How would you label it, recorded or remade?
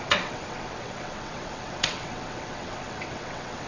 remade